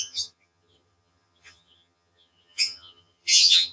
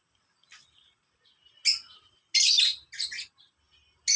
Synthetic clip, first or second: first